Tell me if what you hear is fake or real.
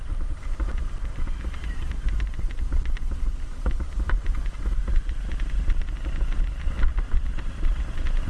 real